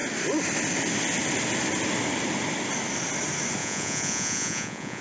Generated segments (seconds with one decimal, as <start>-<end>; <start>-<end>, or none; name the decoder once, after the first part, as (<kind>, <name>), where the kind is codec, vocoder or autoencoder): 3.6-5.0 (vocoder, Vocos)